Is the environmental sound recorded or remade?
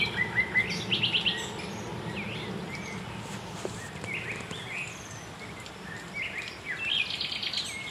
recorded